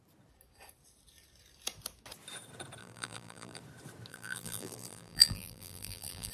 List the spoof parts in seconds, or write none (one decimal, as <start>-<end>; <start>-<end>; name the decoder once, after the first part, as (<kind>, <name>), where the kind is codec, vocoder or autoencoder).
2.8-3.6 (vocoder, BigVGAN v2); 4.1-6.3